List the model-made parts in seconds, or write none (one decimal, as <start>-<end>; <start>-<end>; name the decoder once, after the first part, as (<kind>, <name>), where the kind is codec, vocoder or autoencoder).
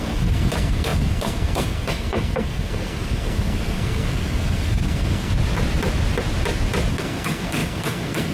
0.0-5.3 (codec, SNAC); 6.9-8.3